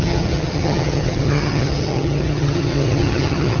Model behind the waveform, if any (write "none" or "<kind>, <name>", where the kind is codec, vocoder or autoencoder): vocoder, HiFi-GAN